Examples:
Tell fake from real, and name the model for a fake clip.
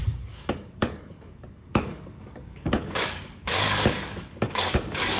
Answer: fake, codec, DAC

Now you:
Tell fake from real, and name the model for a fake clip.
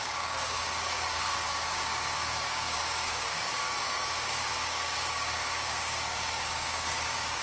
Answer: fake, codec, DAC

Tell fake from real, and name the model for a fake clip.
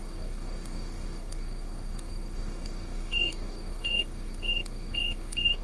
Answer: fake, codec, DAC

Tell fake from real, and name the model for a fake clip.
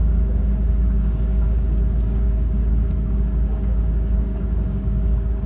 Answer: fake, codec, DAC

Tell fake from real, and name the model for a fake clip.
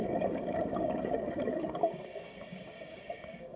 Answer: fake, codec, DAC